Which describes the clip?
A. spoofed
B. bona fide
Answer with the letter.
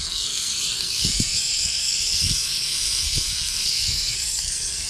A